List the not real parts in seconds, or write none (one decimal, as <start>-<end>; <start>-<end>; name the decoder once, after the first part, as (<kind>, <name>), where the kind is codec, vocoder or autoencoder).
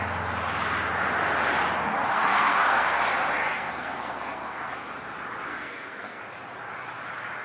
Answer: 2.1-3.0 (codec, SNAC); 3.4-4.7; 5.5-6.2